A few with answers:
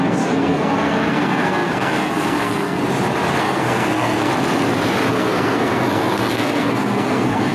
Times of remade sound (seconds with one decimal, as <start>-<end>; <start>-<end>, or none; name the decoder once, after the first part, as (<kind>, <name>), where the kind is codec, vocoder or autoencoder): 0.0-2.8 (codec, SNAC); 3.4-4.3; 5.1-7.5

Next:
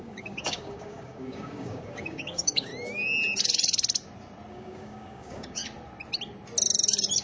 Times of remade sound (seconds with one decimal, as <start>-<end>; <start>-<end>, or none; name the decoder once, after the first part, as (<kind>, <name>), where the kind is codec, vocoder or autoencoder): 0.0-2.7 (codec, DAC); 4.5-5.6

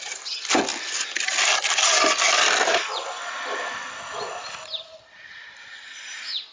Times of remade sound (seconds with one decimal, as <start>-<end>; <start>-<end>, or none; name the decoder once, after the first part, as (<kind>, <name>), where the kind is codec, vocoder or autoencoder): none

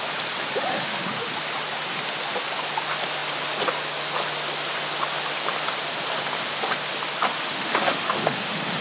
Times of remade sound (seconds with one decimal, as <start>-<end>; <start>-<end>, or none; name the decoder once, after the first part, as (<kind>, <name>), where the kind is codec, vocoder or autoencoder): 0.7-1.3 (autoencoder, DAC-VAE); 7.4-8.8